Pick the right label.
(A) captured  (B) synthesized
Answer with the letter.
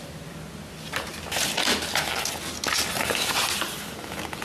A